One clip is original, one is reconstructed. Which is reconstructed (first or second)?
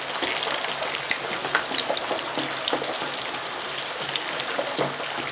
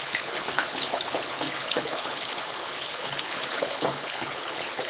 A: second